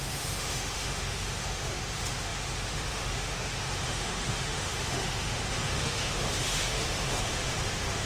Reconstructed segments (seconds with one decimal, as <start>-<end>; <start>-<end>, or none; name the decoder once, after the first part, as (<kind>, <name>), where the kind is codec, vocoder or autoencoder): 0.0-8.1 (autoencoder, DAC-VAE)